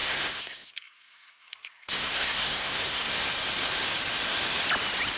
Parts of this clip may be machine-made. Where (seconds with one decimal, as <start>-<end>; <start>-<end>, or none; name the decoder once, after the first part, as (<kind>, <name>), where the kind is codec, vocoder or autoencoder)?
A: 0.0-3.1 (codec, SNAC)